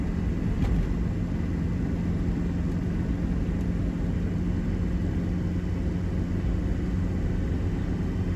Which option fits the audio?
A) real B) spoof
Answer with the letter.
A